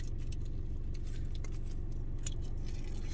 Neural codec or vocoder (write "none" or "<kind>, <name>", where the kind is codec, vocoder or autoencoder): none